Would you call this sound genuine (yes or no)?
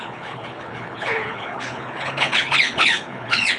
no